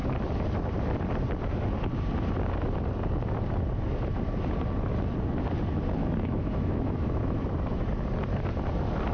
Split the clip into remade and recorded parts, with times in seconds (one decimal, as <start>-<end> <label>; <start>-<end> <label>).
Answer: 0.0-6.0 recorded; 6.0-7.4 remade; 7.4-9.1 recorded